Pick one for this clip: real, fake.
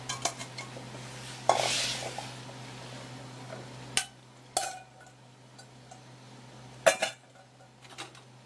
real